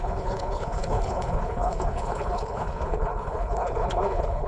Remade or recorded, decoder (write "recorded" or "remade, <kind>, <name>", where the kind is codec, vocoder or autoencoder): remade, codec, HILCodec